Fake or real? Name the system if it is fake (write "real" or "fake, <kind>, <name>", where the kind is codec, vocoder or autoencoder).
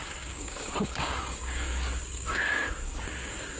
fake, codec, DAC